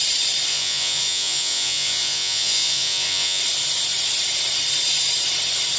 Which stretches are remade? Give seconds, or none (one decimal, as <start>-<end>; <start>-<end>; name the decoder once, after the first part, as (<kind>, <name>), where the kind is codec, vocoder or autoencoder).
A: 0.5-3.4 (vocoder, Vocos)